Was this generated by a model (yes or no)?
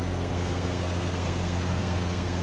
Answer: yes